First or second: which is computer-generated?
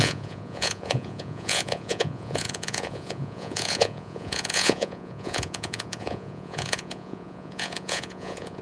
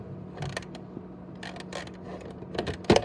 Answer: first